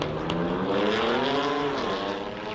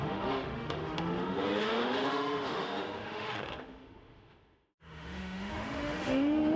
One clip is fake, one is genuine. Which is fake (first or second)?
second